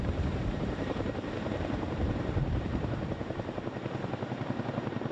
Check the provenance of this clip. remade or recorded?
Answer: remade